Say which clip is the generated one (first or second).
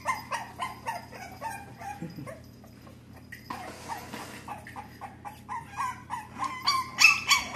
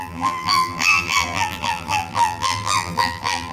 second